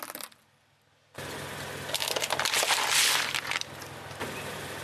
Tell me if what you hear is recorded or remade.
recorded